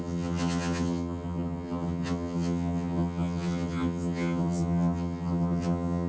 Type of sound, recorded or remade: remade